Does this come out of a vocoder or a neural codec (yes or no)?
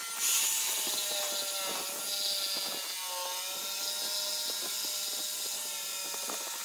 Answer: no